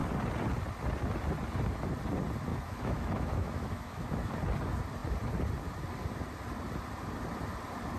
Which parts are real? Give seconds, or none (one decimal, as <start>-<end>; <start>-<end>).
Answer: 0.0-2.5; 4.3-8.0